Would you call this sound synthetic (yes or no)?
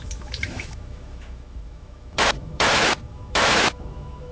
yes